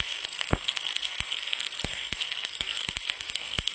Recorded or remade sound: remade